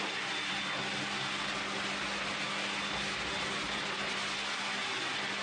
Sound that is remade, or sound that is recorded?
recorded